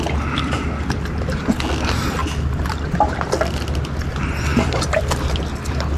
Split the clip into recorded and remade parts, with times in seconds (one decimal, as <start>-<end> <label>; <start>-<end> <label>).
0.0-2.2 recorded; 2.2-3.4 remade; 3.4-4.5 recorded; 4.5-5.0 remade; 5.0-6.0 recorded